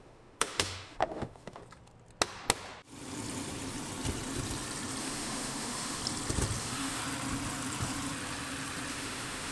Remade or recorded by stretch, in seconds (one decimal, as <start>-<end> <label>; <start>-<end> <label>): 0.0-1.6 remade; 1.6-5.0 recorded; 5.0-6.0 remade; 6.0-6.6 recorded; 6.6-7.0 remade; 7.0-8.9 recorded; 8.9-9.5 remade